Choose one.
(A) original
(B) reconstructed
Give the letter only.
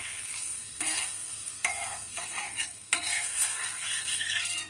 B